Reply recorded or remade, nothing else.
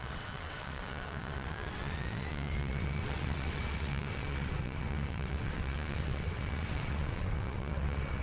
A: remade